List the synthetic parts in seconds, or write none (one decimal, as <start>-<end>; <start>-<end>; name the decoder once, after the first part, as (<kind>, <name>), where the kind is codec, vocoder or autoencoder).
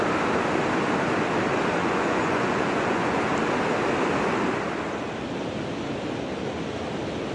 1.8-3.2 (vocoder, Vocos)